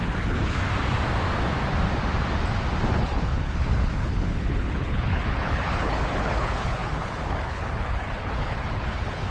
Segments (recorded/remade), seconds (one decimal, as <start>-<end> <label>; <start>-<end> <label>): 0.0-0.6 remade; 0.6-2.9 recorded; 2.9-9.3 remade